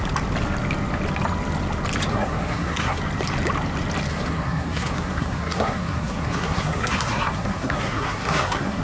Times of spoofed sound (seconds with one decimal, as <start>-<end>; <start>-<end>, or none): 2.1-3.0; 4.1-8.8